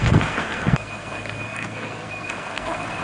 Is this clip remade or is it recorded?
remade